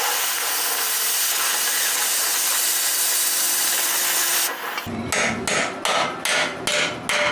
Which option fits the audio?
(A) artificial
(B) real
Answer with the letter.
B